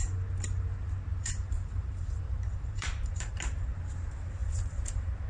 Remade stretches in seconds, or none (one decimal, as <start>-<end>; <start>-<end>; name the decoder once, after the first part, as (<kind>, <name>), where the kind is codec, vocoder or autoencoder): 1.1-3.4 (vocoder, BigVGAN v2); 4.4-5.3